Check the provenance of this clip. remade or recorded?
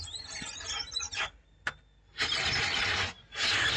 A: recorded